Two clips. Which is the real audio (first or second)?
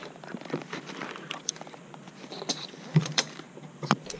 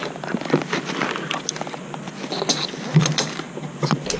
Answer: second